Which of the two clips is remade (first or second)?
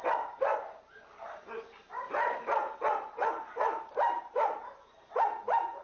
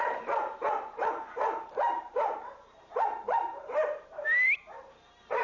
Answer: second